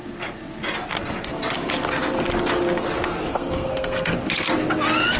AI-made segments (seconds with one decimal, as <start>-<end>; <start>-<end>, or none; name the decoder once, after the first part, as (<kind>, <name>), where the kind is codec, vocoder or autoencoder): 3.3-4.1 (codec, SNAC)